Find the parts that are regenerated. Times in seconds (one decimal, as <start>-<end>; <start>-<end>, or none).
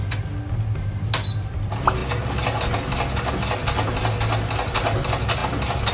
none